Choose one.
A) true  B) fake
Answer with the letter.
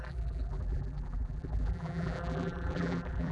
B